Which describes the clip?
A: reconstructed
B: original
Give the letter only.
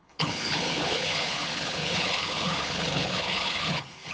A